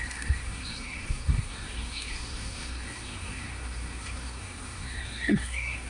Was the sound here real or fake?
fake